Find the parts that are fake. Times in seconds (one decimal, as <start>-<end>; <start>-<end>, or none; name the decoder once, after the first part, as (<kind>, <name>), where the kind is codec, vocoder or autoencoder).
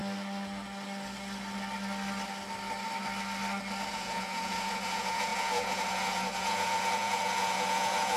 3.9-8.2 (vocoder, Vocos)